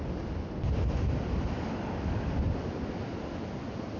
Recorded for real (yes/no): yes